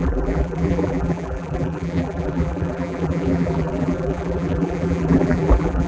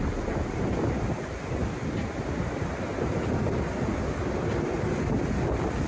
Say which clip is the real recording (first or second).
second